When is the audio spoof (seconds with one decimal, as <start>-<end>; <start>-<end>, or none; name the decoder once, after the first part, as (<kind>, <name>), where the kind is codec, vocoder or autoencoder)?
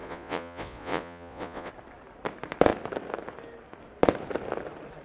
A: 0.0-1.7 (vocoder, Vocos)